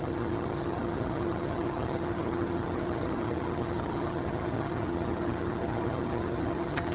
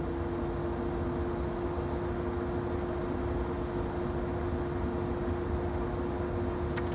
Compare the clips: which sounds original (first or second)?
second